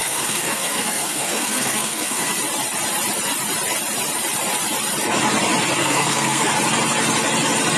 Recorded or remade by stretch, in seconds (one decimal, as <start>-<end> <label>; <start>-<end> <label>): 0.0-2.3 remade; 2.3-5.8 recorded; 5.8-6.5 remade; 6.5-7.8 recorded

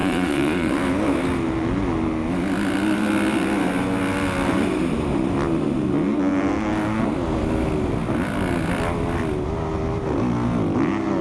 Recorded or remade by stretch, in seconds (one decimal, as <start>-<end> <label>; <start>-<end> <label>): 0.0-0.7 remade; 0.7-11.2 recorded

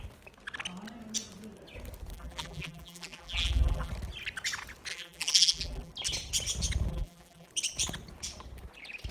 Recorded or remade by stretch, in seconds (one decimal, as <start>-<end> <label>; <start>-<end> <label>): 0.0-2.1 recorded; 2.1-3.9 remade; 3.9-4.9 recorded; 4.9-5.9 remade; 5.9-6.9 recorded; 6.9-7.5 remade; 7.5-9.1 recorded

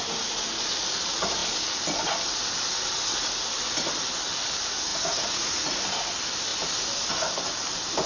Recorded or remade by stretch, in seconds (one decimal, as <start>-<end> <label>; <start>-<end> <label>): 0.0-4.9 recorded; 4.9-5.8 remade; 5.8-8.1 recorded